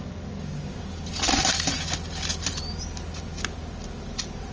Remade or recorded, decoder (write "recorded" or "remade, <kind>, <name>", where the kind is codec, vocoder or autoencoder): recorded